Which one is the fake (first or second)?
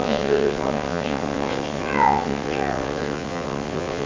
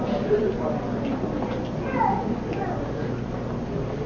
first